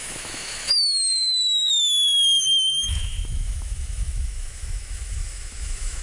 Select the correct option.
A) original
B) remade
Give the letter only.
B